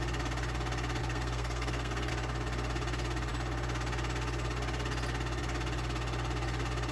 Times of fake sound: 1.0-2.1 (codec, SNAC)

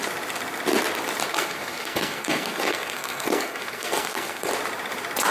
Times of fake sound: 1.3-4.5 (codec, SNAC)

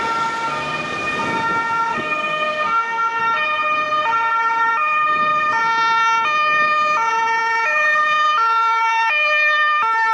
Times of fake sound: 1.9-3.2 (codec, SNAC)

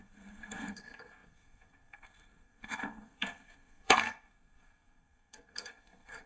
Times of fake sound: 0.0-6.3 (codec, SNAC)